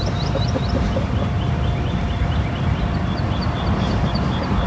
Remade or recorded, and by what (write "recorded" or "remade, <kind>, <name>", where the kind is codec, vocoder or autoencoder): recorded